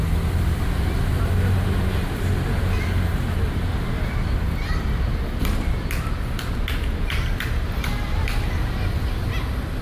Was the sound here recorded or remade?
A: recorded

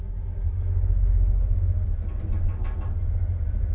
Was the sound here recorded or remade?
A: recorded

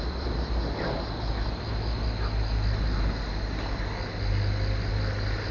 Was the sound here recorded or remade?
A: recorded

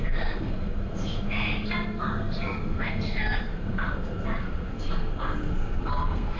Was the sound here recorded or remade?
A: remade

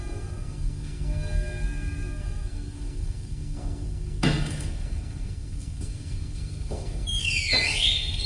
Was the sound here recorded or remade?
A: remade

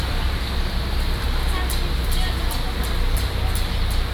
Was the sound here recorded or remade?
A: recorded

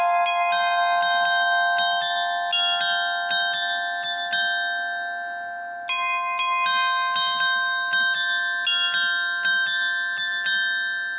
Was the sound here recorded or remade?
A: recorded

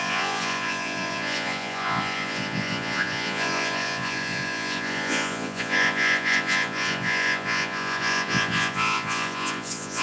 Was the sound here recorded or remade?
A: remade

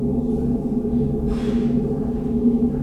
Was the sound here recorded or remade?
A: recorded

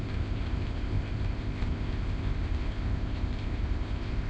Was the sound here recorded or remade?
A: remade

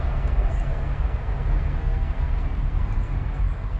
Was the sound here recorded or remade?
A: remade